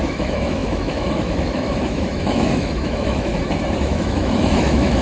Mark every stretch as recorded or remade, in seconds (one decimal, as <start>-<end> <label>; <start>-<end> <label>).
0.0-3.3 remade; 3.3-3.8 recorded; 3.8-5.0 remade